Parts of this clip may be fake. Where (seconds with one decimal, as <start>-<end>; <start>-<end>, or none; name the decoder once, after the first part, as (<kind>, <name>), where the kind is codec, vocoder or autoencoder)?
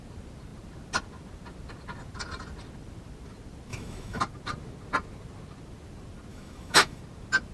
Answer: 3.7-4.2 (autoencoder, DAC-VAE); 6.3-7.0